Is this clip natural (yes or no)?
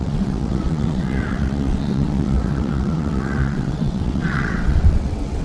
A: no